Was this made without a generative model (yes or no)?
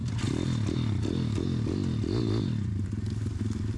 yes